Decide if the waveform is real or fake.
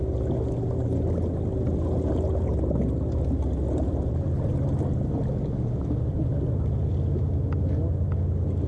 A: real